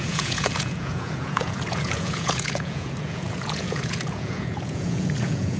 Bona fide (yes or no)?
no